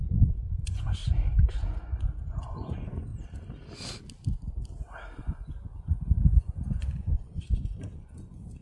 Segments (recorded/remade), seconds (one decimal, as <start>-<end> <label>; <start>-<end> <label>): 0.0-1.0 remade; 1.0-1.5 recorded; 1.5-3.1 remade; 3.1-5.2 recorded; 5.2-8.6 remade